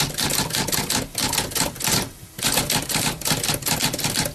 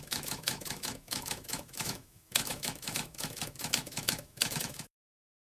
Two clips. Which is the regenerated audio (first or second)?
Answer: second